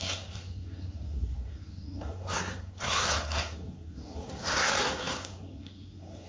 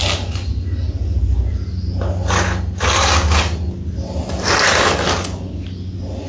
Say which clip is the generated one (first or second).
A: first